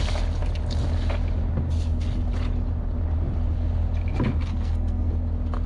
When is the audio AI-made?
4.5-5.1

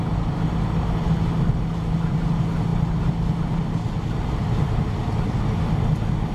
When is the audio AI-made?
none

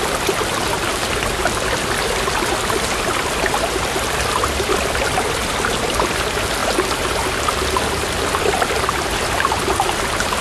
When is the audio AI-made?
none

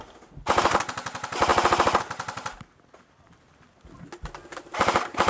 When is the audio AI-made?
none

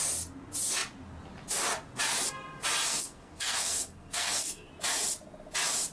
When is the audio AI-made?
2.9-4.7

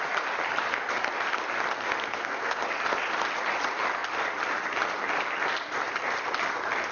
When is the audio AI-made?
2.0-2.6

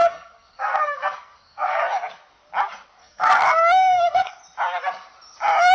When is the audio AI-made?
0.0-1.8; 3.0-4.3

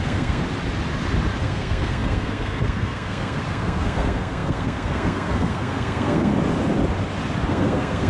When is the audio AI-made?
0.0-0.4; 1.4-6.3; 7.5-8.1